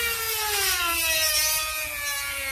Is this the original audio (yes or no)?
yes